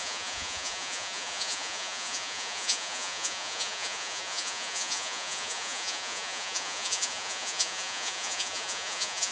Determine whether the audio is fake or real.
fake